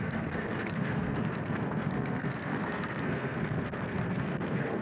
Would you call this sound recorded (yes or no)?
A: no